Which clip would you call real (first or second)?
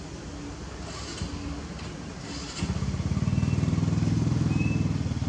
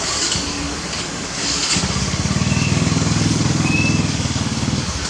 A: first